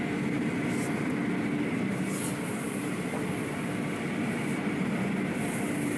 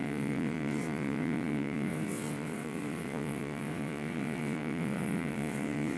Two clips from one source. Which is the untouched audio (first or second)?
first